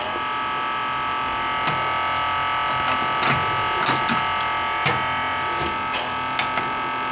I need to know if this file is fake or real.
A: real